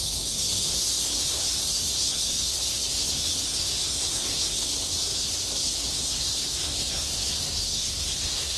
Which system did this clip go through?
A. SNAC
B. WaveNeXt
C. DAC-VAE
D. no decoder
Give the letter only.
A